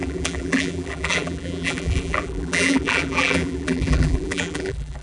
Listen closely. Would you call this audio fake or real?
fake